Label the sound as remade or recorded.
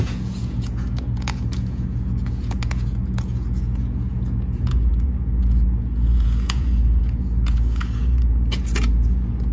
remade